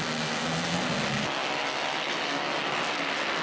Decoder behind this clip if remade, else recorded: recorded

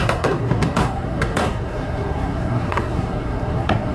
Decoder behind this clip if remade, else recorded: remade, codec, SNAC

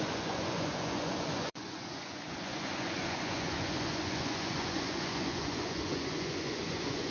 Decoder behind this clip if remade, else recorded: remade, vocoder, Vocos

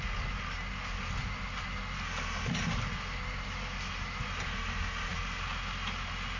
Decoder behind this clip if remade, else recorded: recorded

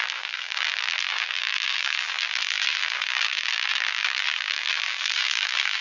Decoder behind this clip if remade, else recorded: remade, vocoder, BigVGAN v2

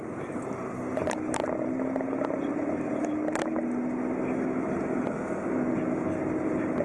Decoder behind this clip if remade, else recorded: recorded